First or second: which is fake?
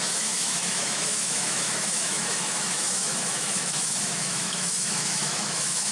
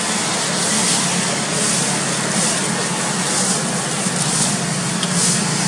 first